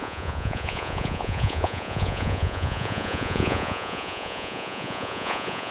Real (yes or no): no